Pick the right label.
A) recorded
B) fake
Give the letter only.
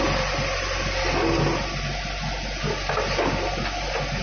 A